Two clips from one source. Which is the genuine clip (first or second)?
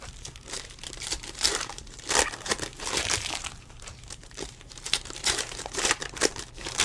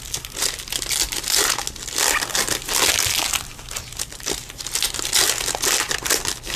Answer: second